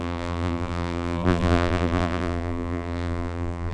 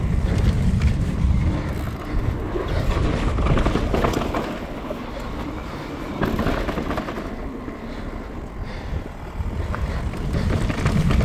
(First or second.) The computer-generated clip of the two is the first